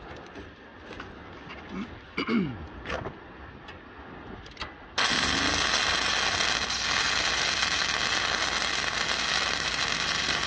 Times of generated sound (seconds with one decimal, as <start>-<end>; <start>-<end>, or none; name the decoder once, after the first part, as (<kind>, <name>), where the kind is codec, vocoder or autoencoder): none